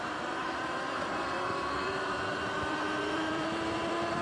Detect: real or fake fake